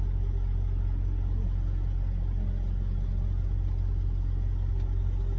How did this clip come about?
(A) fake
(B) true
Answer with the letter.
B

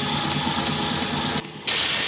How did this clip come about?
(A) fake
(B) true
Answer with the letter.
B